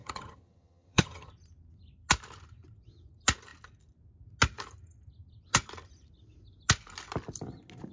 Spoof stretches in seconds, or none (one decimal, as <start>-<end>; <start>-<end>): 0.0-1.3